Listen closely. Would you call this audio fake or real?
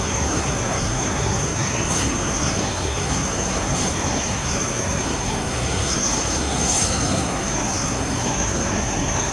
fake